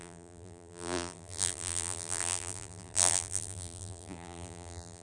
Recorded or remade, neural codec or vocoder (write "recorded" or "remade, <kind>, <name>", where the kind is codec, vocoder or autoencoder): remade, vocoder, BigVGAN v2